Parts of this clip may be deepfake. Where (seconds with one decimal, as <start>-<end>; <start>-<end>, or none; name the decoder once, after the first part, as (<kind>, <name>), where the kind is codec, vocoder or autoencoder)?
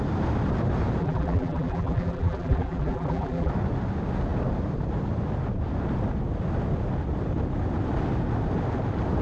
1.0-3.5 (vocoder, BigVGAN v2)